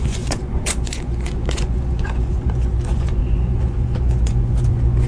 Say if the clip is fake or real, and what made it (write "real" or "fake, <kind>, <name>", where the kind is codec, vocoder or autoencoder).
fake, vocoder, Vocos